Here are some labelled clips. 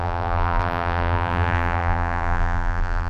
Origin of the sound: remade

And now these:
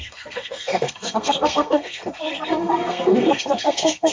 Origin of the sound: remade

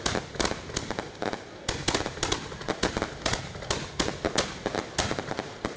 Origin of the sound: recorded